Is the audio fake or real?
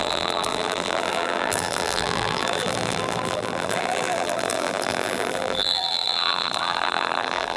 fake